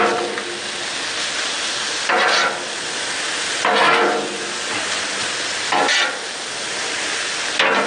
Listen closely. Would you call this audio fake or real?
real